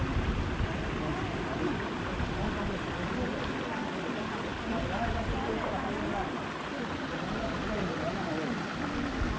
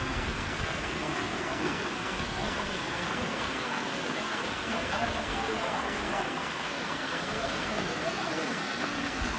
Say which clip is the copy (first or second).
second